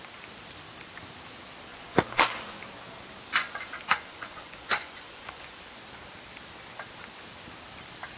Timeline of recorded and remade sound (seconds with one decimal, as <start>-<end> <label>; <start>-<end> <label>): 0.0-1.7 recorded; 1.7-2.6 remade; 2.6-3.3 recorded; 3.3-5.6 remade; 5.6-8.2 recorded